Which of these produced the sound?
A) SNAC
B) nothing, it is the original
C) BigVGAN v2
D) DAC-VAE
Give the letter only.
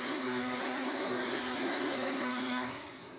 A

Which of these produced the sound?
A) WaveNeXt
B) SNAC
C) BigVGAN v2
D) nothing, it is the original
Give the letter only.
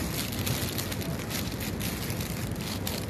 D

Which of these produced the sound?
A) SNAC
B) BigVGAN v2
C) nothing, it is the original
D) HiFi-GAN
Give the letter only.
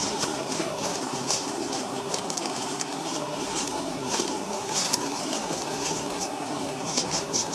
A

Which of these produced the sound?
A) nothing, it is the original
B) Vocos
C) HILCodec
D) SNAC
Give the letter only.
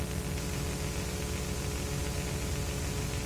A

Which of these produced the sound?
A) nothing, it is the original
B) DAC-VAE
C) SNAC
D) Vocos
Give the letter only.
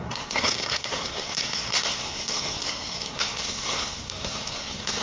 C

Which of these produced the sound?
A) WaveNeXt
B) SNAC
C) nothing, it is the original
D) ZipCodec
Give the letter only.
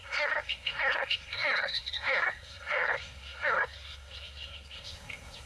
B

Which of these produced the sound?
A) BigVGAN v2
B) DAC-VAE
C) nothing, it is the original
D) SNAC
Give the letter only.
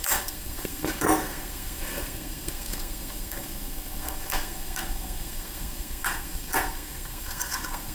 D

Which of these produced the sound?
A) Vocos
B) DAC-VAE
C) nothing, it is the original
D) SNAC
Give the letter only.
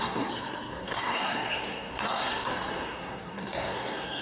D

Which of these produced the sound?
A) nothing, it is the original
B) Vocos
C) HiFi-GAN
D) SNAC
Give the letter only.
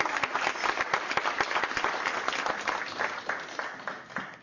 A